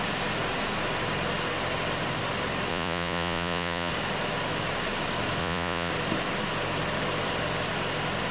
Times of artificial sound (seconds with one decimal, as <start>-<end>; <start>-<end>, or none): 2.7-3.9; 5.4-5.9